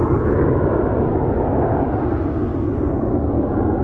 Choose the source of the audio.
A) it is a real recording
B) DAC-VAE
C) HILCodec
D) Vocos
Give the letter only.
A